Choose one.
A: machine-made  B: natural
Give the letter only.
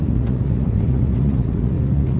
A